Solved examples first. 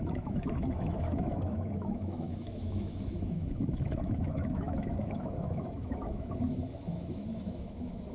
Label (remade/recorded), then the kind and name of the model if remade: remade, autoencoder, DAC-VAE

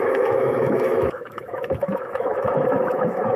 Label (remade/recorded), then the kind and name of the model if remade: remade, autoencoder, DAC-VAE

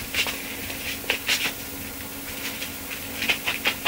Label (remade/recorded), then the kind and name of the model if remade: recorded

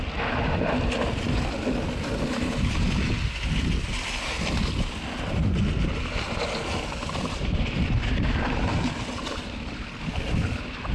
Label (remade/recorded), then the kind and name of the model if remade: recorded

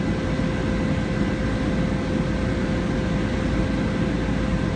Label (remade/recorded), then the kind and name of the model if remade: recorded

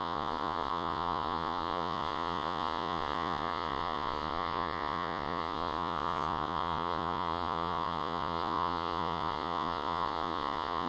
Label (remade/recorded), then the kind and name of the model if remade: remade, vocoder, Vocos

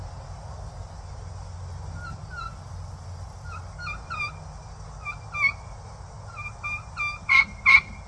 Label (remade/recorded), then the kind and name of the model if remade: recorded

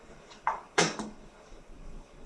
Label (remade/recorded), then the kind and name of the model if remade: remade, codec, DAC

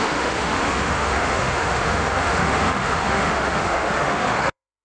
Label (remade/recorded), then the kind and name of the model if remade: remade, autoencoder, DAC-VAE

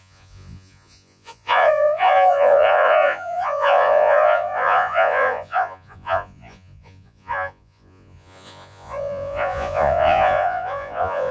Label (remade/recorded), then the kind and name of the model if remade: remade, vocoder, Vocos